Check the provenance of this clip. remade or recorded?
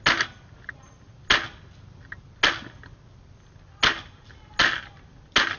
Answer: recorded